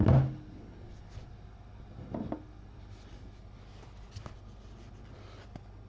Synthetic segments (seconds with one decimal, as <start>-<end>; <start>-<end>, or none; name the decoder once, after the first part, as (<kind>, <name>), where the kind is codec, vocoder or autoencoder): none